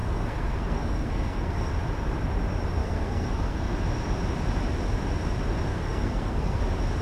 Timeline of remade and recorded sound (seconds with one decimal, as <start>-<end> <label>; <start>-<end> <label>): 0.0-1.7 remade; 1.7-2.8 recorded; 2.8-3.7 remade; 3.7-5.7 recorded; 5.7-6.6 remade; 6.6-7.0 recorded